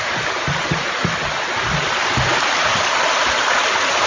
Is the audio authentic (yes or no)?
yes